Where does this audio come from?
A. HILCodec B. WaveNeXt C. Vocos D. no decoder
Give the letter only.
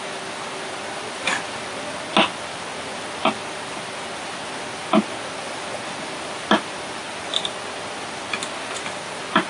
D